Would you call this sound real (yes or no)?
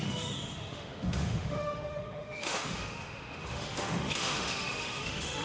no